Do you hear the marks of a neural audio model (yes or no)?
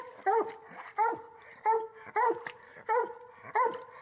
no